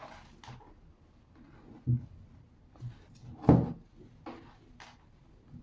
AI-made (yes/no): no